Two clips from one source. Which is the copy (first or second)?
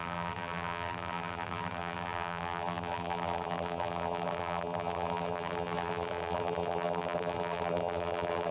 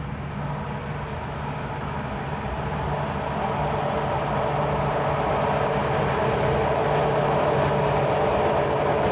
first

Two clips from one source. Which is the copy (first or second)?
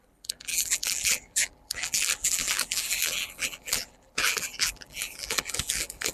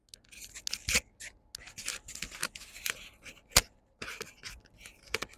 first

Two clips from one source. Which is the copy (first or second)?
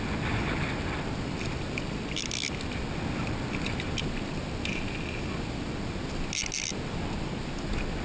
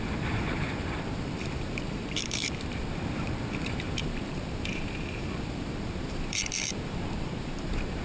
second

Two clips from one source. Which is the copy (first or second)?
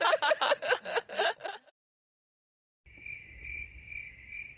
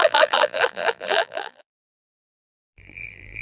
second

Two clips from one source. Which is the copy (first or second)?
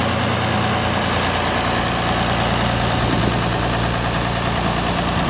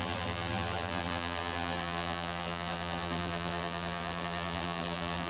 second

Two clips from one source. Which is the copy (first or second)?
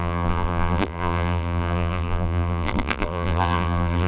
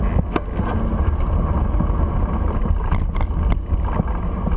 first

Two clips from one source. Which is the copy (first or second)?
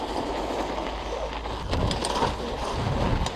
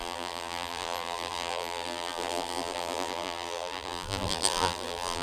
second